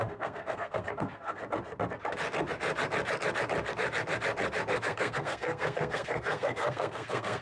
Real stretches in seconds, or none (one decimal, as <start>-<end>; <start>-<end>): 1.4-4.7